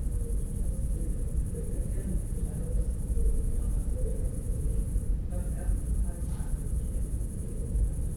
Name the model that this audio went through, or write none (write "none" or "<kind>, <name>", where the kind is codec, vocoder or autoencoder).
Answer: vocoder, BigVGAN v2